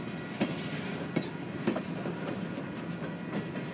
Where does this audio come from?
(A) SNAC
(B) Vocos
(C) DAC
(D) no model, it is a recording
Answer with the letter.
D